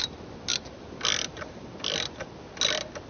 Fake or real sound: real